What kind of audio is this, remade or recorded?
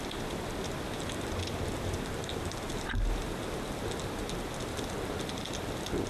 recorded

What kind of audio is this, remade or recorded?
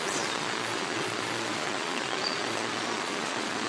remade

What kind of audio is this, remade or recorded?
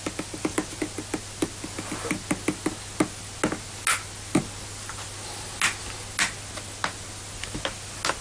recorded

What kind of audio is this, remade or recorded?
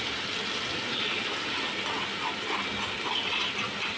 recorded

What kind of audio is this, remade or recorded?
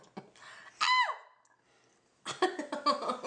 recorded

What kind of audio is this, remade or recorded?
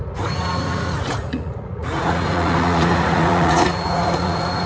remade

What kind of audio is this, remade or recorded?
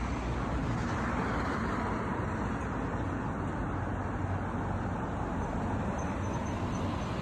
recorded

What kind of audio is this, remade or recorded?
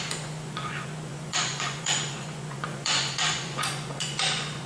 remade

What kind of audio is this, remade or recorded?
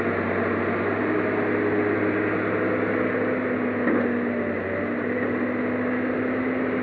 recorded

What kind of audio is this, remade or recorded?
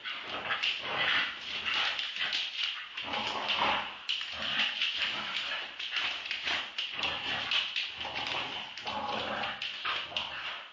recorded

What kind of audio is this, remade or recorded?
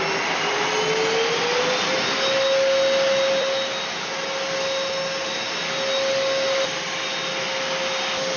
recorded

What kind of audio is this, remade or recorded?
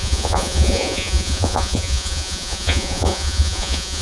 remade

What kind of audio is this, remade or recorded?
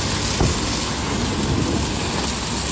recorded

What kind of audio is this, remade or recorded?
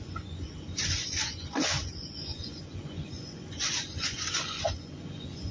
remade